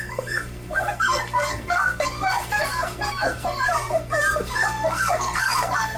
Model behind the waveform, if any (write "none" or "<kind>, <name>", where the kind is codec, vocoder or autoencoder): codec, SNAC